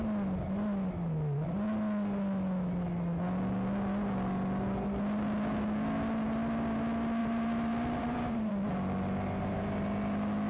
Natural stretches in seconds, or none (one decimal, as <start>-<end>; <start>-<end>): 0.0-7.2; 8.5-10.5